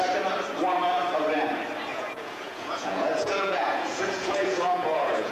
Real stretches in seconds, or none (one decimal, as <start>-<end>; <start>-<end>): 0.0-1.9